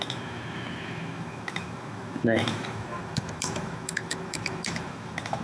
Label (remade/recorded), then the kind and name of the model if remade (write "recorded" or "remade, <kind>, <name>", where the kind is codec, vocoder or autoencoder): remade, autoencoder, DAC-VAE